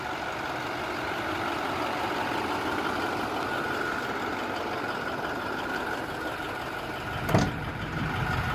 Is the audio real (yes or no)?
yes